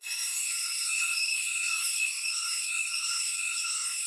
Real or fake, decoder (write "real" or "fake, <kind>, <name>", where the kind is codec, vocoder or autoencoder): fake, codec, SNAC